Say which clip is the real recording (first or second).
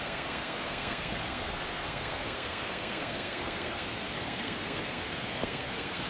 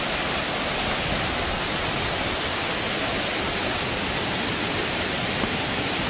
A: second